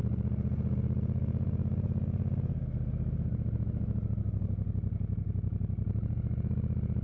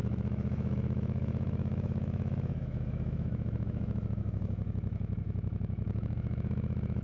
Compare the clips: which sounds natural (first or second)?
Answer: first